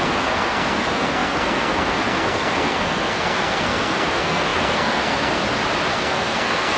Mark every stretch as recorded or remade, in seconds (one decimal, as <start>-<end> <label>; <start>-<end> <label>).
0.0-5.4 remade; 5.4-5.9 recorded; 5.9-6.8 remade